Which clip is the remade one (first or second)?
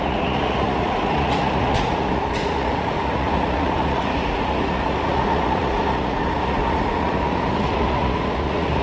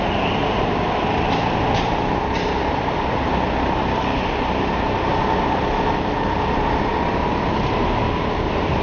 first